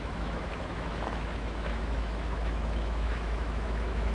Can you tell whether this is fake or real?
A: fake